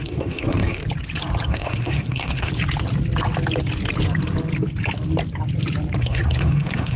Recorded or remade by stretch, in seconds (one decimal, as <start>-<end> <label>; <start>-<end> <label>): 0.0-0.8 remade; 0.8-1.5 recorded; 1.5-2.5 remade; 2.5-6.0 recorded; 6.0-7.0 remade